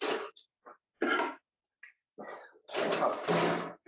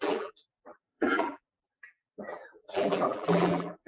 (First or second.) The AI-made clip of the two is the second